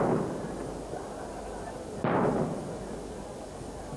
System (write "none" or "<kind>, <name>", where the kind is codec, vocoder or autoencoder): none